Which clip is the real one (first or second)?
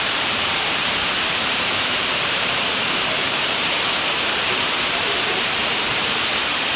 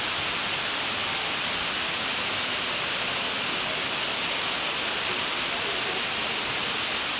second